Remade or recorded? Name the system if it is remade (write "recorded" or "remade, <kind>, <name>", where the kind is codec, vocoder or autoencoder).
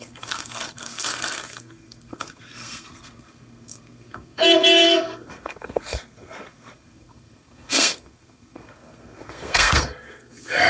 remade, codec, SNAC